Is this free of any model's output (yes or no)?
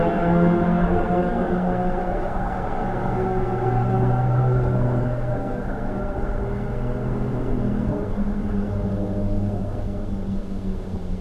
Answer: no